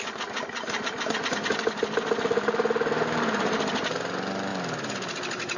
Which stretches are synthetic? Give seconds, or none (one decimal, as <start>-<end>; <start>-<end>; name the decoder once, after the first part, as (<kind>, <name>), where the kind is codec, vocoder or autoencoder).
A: none